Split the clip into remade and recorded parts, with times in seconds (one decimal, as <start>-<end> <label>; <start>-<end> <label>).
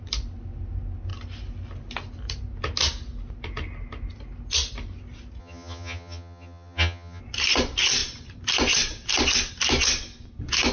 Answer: 0.0-5.4 recorded; 5.4-7.2 remade; 7.2-10.7 recorded